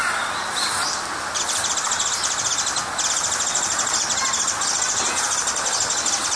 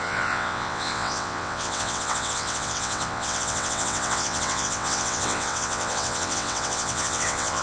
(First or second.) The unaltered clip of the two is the first